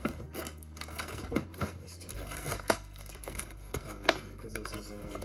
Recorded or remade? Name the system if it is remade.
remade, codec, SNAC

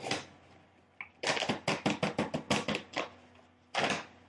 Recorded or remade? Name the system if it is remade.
recorded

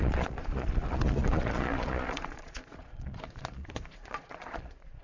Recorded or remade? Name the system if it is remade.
remade, vocoder, Vocos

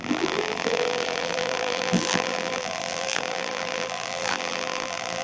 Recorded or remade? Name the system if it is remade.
remade, vocoder, BigVGAN v2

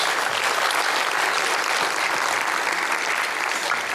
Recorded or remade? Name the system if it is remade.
recorded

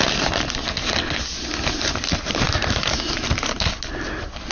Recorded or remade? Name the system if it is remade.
recorded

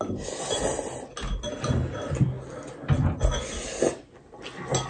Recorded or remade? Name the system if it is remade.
recorded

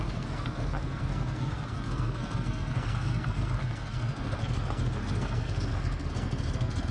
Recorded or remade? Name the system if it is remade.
remade, codec, SNAC